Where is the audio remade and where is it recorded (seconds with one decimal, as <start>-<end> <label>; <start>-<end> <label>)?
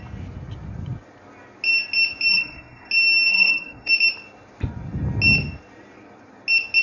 0.0-2.3 recorded; 2.3-2.9 remade; 2.9-3.3 recorded; 3.3-3.9 remade; 3.9-6.8 recorded